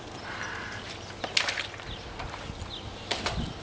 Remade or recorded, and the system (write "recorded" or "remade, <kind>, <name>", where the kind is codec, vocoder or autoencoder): recorded